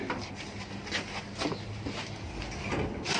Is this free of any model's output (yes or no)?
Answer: yes